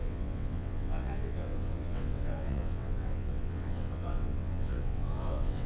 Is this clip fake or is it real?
fake